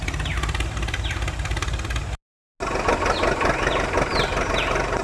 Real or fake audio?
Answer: real